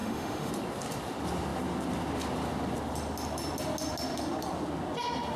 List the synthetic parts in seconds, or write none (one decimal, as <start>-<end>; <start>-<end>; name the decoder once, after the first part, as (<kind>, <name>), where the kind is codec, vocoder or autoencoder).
0.0-0.5 (autoencoder, DAC-VAE)